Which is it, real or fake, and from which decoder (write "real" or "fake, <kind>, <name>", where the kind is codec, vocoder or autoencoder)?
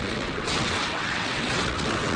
fake, vocoder, WaveNeXt